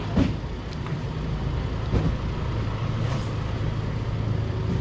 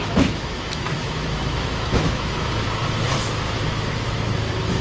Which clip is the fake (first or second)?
second